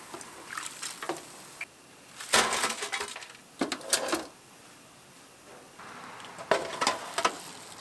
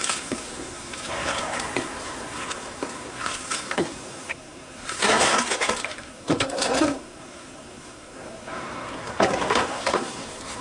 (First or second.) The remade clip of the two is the second